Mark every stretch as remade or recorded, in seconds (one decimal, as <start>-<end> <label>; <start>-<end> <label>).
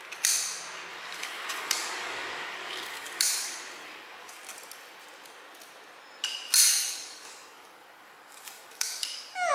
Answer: 0.0-0.9 recorded; 0.9-4.4 remade; 4.4-6.7 recorded; 6.7-9.5 remade